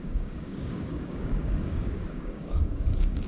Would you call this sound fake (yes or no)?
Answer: yes